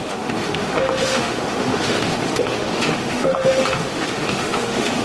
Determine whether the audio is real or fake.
fake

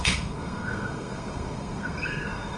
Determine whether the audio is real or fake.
fake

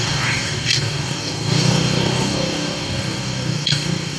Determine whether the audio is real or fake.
fake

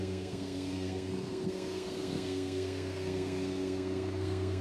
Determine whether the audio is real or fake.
fake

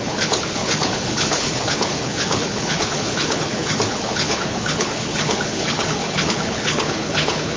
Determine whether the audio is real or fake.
fake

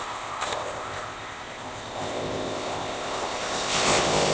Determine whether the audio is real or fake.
fake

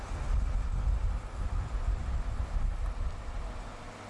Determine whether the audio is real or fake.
real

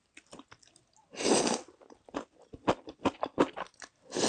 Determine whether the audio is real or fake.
real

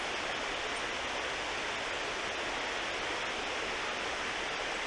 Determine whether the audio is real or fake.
real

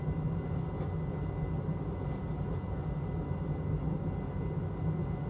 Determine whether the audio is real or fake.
real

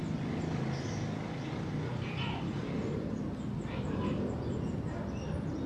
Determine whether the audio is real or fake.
real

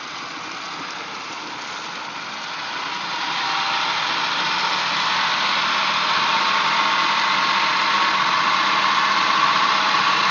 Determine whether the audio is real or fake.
real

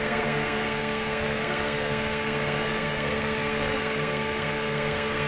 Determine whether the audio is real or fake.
fake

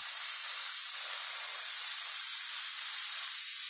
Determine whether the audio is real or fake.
real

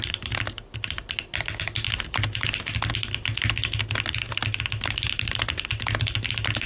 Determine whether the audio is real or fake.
real